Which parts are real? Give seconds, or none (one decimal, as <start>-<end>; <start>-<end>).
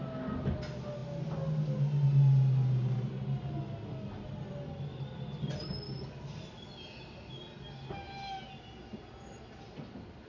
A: 0.0-10.3